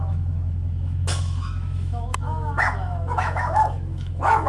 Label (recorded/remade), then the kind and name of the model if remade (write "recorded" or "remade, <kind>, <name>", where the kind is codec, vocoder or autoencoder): remade, autoencoder, DAC-VAE